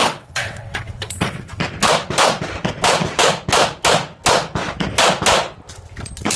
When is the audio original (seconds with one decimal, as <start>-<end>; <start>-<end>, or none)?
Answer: 1.6-6.4